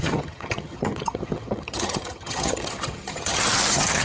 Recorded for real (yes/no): no